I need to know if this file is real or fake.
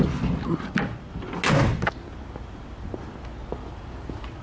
real